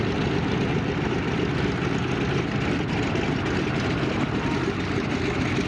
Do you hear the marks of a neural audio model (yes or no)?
yes